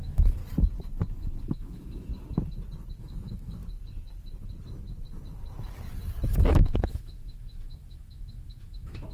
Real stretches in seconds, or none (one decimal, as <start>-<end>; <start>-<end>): 0.4-1.4; 2.1-3.0; 3.6-6.3